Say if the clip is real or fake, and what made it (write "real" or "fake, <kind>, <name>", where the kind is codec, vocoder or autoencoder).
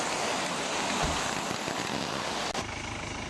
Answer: real